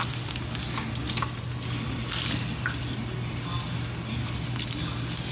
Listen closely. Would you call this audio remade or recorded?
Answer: recorded